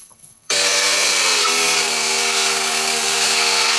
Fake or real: fake